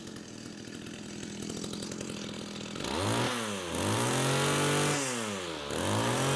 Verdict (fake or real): real